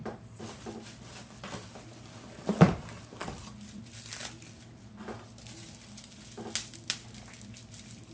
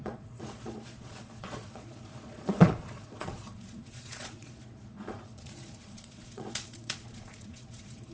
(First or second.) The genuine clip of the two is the first